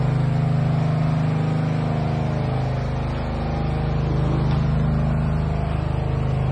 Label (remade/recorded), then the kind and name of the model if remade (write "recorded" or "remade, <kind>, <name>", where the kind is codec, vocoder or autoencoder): recorded